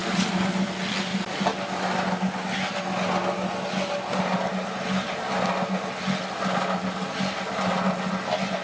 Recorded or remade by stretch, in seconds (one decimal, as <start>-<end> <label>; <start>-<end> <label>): 0.0-0.7 remade; 0.7-8.6 recorded